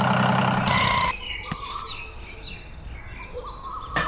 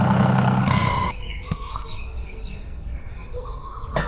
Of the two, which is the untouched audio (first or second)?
first